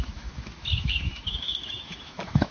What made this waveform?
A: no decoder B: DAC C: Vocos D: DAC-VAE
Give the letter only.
D